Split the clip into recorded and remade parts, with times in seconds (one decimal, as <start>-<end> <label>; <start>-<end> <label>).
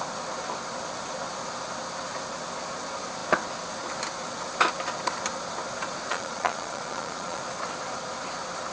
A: 0.0-6.1 recorded; 6.1-7.4 remade; 7.4-8.7 recorded